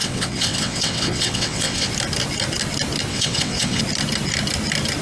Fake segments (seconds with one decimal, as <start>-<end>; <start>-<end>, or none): 0.0-1.9; 3.1-3.8